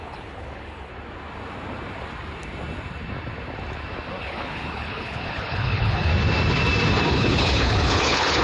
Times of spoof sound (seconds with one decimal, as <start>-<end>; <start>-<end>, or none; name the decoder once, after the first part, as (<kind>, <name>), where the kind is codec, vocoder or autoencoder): 0.0-0.9 (codec, HILCodec); 4.2-6.1; 7.1-8.4